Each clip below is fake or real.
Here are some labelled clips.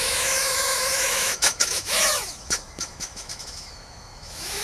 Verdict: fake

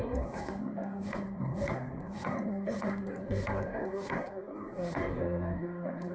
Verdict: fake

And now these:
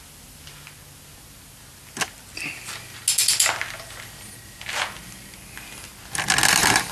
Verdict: real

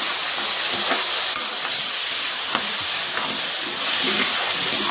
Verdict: real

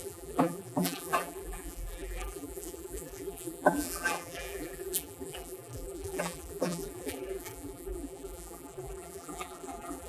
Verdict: fake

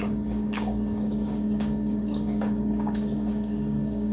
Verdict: fake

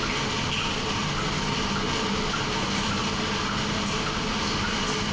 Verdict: real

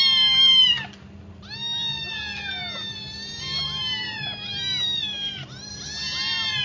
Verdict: real